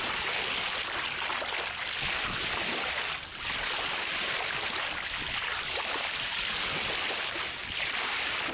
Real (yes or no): yes